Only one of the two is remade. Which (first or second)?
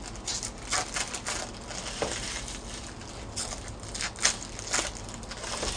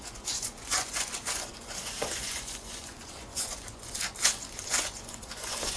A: second